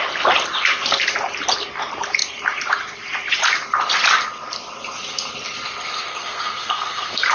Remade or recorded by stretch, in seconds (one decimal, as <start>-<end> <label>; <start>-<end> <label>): 0.0-6.1 recorded; 6.1-7.3 remade